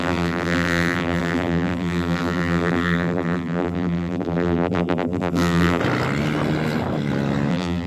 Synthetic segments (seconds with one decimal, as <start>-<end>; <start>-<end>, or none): 0.0-5.8; 7.5-7.9